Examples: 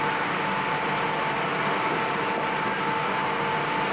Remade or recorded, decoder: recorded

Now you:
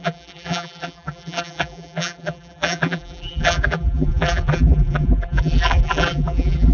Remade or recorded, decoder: remade, vocoder, BigVGAN v2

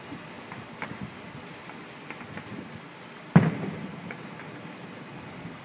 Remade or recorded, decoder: recorded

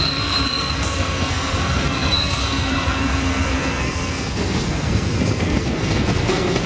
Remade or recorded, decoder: remade, codec, SNAC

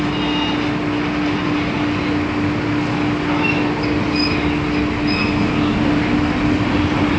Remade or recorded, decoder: recorded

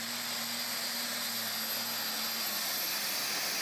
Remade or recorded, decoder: recorded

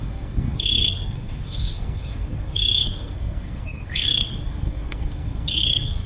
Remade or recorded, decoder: remade, codec, SNAC